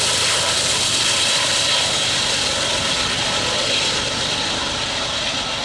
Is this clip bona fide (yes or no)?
yes